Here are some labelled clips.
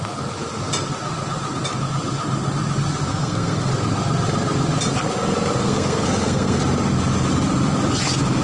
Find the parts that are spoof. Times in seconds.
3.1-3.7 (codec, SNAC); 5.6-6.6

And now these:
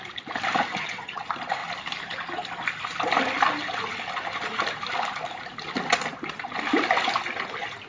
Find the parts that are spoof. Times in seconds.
0.7-1.2 (vocoder, HiFi-GAN)

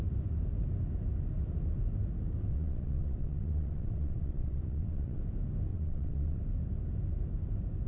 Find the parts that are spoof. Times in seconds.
2.5-5.2 (vocoder, WaveNeXt); 5.7-6.4

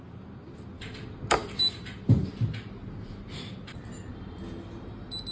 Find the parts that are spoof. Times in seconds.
none